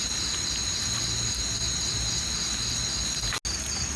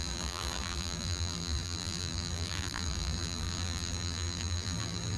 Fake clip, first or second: second